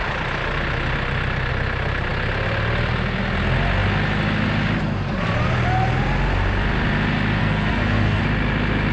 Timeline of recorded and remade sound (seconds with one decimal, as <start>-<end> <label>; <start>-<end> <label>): 0.0-7.4 recorded; 7.4-8.2 remade; 8.2-8.9 recorded